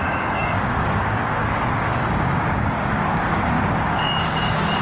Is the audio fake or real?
fake